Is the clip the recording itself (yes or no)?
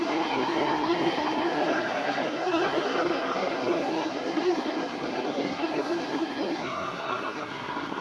no